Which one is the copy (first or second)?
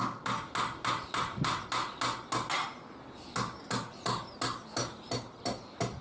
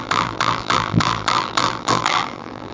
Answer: second